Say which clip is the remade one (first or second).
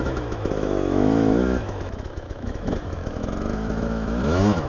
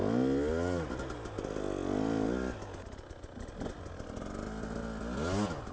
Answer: first